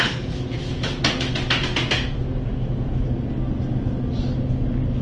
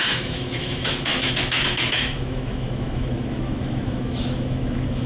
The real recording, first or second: first